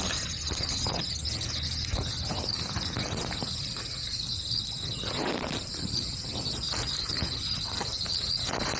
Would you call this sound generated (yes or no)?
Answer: no